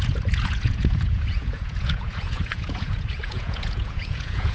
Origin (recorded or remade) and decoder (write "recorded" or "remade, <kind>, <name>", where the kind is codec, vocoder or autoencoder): remade, vocoder, Vocos